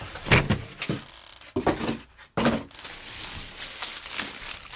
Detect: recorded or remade recorded